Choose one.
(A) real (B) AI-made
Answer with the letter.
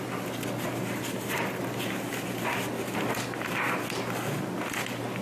A